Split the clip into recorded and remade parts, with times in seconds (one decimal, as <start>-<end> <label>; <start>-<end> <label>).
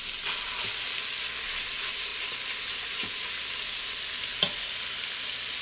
0.0-5.6 recorded